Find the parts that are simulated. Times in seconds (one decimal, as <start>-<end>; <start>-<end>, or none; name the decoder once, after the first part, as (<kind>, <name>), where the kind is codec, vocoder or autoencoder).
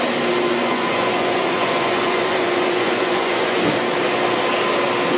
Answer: 0.6-3.7 (vocoder, Vocos)